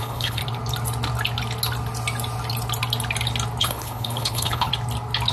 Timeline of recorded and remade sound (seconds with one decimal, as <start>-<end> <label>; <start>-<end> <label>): 0.0-0.4 remade; 0.4-3.6 recorded; 3.6-4.7 remade; 4.7-5.3 recorded